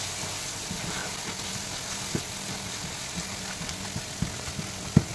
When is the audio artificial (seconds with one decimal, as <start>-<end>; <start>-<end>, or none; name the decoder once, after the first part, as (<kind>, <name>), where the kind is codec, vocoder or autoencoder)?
none